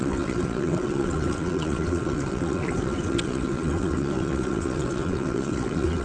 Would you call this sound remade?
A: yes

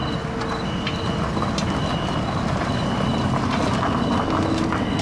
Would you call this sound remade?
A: no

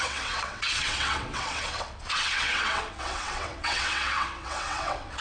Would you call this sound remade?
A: yes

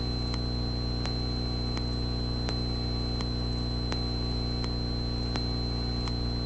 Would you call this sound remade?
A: no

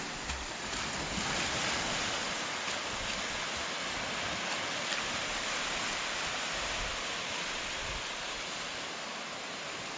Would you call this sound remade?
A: no